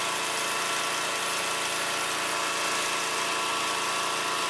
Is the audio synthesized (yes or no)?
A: no